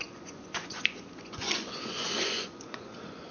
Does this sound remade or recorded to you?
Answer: remade